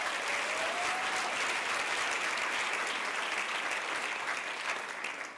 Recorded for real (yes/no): yes